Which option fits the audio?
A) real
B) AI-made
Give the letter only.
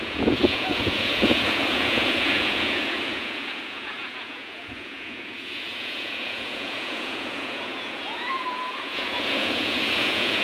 B